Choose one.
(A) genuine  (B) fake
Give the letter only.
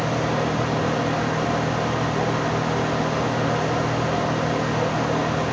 A